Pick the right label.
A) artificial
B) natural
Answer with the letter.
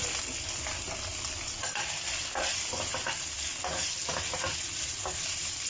B